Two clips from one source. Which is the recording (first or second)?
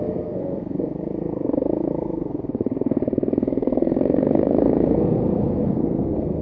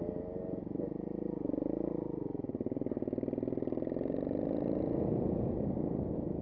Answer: second